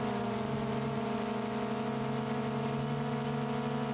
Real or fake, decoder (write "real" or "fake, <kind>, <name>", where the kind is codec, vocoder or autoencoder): real